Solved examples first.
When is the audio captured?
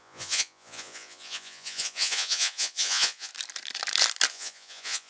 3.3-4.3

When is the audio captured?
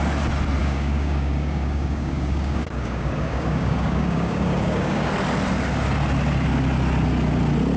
0.0-0.6; 5.1-7.8